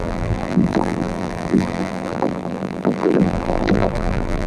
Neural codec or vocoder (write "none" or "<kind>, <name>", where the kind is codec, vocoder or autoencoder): vocoder, BigVGAN v2